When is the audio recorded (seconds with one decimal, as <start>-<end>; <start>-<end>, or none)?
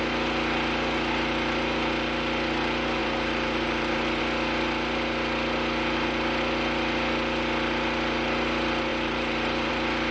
0.0-3.0; 4.2-8.9; 9.7-10.1